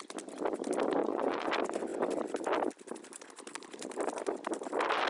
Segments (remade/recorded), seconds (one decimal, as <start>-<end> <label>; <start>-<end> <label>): 0.0-1.0 recorded; 1.0-1.5 remade; 1.5-5.1 recorded